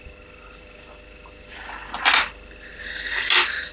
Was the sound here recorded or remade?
recorded